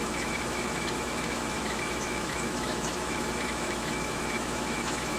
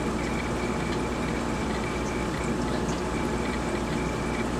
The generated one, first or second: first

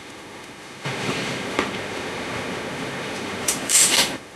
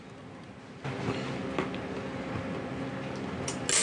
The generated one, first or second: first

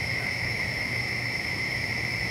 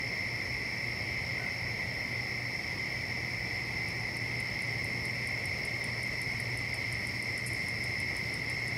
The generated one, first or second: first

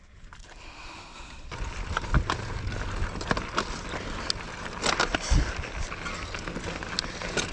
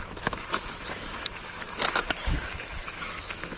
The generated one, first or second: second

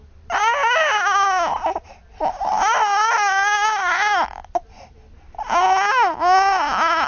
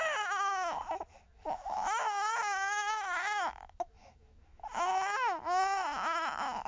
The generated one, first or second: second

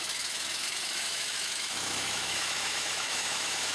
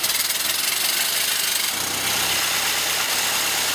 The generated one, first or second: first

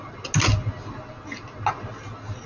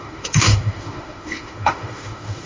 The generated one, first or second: second